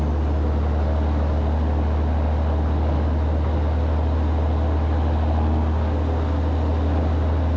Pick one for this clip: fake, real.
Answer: real